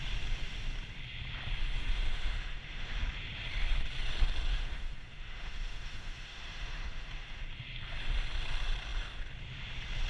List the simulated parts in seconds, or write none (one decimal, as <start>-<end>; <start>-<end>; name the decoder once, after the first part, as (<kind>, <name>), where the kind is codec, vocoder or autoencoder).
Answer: 1.8-3.0 (autoencoder, DAC-VAE); 4.5-7.4